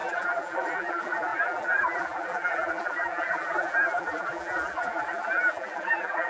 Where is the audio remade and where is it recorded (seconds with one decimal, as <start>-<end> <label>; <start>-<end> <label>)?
0.0-6.3 remade